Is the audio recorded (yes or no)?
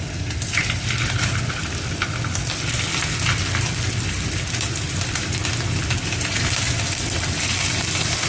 yes